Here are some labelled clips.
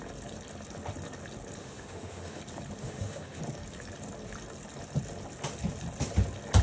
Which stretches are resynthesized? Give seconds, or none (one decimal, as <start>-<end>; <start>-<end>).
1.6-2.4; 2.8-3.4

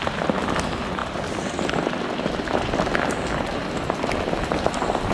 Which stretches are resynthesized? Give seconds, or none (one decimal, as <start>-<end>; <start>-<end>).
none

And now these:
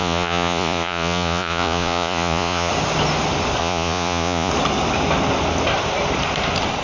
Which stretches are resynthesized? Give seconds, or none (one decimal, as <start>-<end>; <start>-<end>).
0.0-2.7; 3.6-4.5